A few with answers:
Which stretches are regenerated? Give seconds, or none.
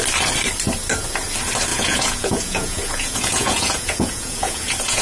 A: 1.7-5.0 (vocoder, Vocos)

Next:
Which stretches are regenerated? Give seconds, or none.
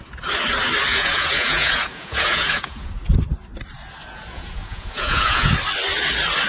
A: 0.9-2.9 (vocoder, Vocos); 4.0-5.5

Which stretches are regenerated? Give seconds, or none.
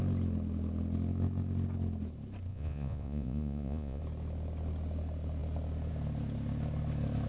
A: 2.5-4.0 (vocoder, Vocos)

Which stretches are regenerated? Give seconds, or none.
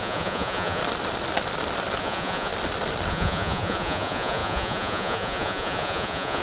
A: 0.0-0.8 (vocoder, Vocos); 2.0-2.5; 3.1-6.4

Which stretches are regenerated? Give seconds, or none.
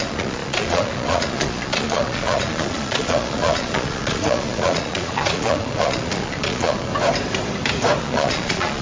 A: 0.0-6.9 (vocoder, Vocos); 8.0-8.8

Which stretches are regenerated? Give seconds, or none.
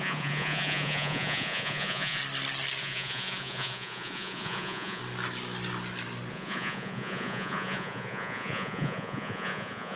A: 0.0-2.2 (vocoder, Vocos); 2.8-5.0; 6.3-10.0